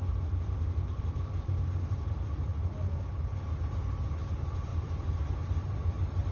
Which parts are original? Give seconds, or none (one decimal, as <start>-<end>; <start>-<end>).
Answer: 1.5-2.1; 2.5-3.6